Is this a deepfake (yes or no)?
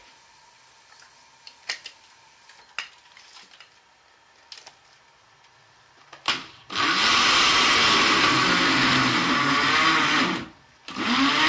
no